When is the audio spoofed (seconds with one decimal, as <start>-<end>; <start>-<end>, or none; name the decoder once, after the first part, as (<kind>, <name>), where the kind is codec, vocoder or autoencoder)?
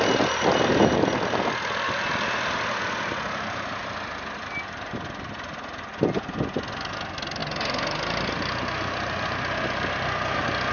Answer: none